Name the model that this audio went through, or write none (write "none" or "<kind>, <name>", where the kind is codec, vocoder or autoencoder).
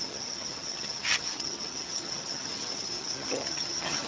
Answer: vocoder, HiFi-GAN